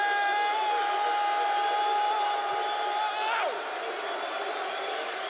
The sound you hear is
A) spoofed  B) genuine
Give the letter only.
B